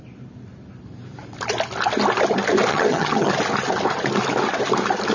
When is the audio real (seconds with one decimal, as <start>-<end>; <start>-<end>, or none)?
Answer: 0.0-2.7; 3.3-5.1